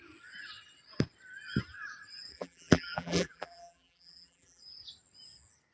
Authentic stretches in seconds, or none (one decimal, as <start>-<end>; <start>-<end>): 0.0-2.3; 4.6-5.7